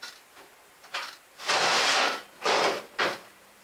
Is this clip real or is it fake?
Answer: fake